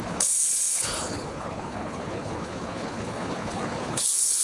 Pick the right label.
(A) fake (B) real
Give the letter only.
A